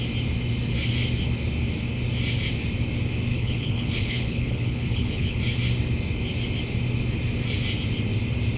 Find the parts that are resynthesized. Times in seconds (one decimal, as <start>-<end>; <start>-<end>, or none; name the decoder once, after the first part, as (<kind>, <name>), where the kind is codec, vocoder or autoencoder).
3.3-5.4 (codec, HILCodec)